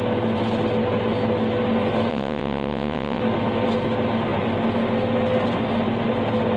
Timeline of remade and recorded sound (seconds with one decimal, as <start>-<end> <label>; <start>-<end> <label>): 0.0-2.1 recorded; 2.1-3.2 remade; 3.2-6.6 recorded